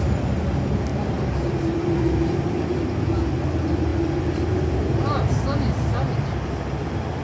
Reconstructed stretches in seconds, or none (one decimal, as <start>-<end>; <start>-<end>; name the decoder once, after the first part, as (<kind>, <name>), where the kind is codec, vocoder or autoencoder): none